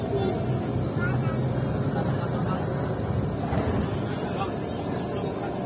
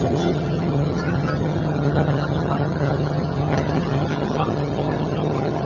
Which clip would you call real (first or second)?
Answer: first